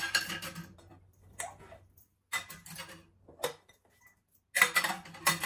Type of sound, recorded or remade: recorded